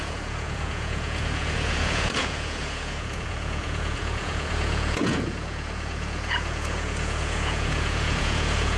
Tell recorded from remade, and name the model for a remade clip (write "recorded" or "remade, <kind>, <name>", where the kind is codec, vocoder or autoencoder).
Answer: remade, vocoder, Vocos